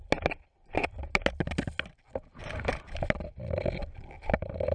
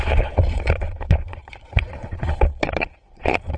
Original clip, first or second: first